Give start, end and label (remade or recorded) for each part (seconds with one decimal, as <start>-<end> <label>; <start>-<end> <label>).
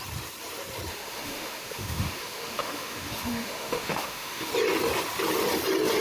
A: 0.0-0.9 recorded; 0.9-4.5 remade; 4.5-6.0 recorded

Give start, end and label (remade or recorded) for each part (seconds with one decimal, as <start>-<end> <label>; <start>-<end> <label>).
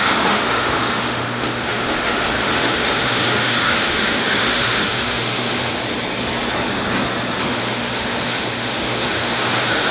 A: 0.0-5.8 remade; 5.8-7.4 recorded; 7.4-9.9 remade